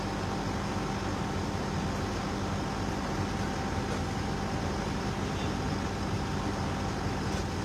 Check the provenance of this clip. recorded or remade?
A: recorded